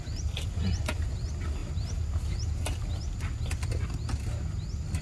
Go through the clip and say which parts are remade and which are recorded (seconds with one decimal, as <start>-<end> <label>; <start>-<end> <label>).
0.0-5.0 recorded